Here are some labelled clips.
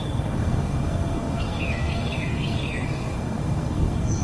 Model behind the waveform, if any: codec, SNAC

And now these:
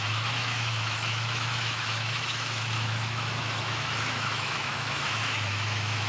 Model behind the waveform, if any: autoencoder, DAC-VAE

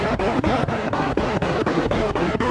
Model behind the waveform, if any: codec, SNAC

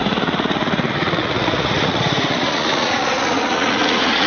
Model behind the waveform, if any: vocoder, Vocos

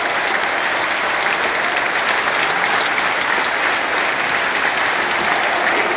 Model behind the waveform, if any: none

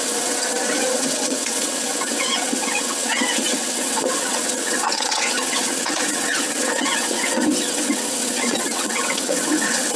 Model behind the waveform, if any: vocoder, WaveNeXt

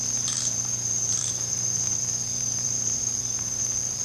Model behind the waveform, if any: vocoder, BigVGAN v2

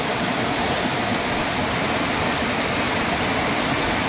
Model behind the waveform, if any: none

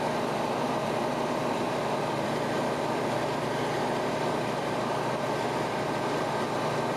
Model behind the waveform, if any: vocoder, BigVGAN v2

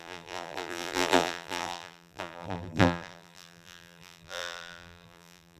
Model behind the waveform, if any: vocoder, BigVGAN v2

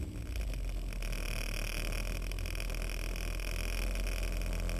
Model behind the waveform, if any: none